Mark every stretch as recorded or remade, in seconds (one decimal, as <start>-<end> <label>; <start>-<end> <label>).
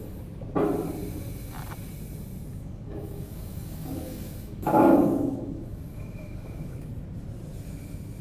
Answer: 0.0-2.5 recorded; 2.5-6.9 remade; 6.9-8.2 recorded